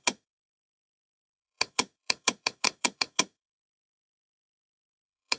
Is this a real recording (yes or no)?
no